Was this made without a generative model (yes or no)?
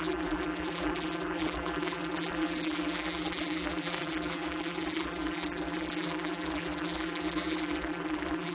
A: no